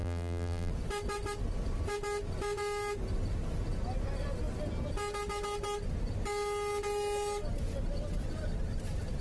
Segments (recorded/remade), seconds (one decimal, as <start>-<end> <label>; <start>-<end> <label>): 0.0-0.7 remade; 0.7-9.2 recorded